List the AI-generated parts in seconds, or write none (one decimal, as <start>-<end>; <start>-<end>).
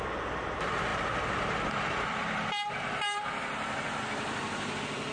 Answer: none